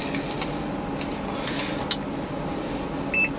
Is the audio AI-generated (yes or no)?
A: no